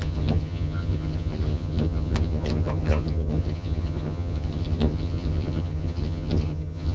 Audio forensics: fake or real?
fake